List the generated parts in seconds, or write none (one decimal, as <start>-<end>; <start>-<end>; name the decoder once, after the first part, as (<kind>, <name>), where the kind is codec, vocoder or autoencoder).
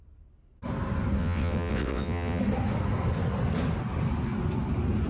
1.2-2.4 (vocoder, WaveNeXt)